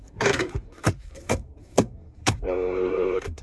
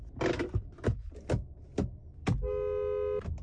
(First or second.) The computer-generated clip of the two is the first